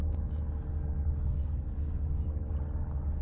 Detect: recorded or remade recorded